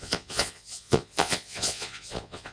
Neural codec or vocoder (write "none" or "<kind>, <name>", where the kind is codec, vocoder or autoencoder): vocoder, Vocos